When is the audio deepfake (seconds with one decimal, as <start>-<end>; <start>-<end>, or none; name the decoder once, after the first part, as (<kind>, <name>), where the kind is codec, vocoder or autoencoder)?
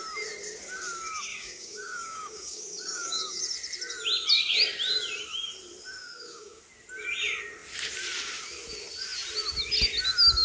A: 1.3-3.4 (codec, DAC); 6.0-6.6